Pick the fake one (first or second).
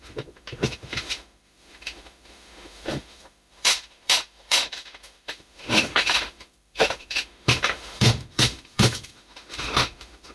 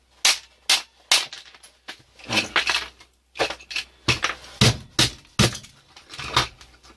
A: first